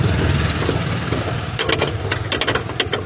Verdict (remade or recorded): recorded